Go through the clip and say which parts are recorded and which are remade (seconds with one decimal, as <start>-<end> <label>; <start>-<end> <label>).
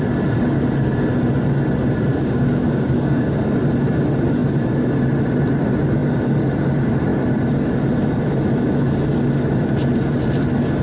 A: 0.0-2.1 recorded; 2.1-3.4 remade; 3.4-10.8 recorded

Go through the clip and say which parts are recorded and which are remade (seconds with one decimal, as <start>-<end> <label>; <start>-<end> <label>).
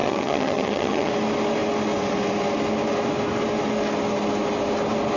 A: 0.0-1.1 remade; 1.1-5.2 recorded